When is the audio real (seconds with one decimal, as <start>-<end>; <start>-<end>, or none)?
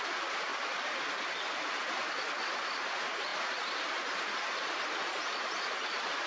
0.0-6.3